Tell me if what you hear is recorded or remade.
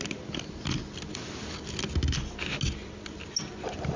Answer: recorded